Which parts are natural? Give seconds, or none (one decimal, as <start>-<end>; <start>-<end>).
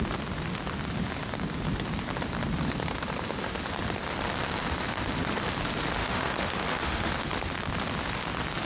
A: 0.0-6.0; 7.1-8.6